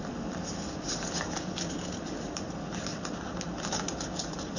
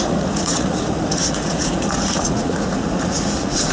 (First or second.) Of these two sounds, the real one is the first